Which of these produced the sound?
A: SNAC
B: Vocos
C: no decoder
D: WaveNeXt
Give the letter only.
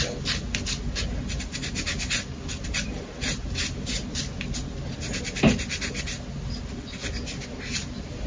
C